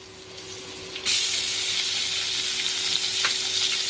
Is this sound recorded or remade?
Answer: recorded